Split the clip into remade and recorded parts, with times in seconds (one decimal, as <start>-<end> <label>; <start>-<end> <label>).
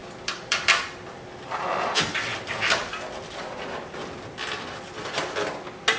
0.0-0.8 remade; 0.8-2.3 recorded; 2.3-2.9 remade; 2.9-6.0 recorded